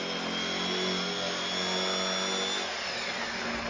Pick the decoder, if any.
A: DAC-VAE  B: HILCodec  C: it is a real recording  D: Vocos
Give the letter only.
C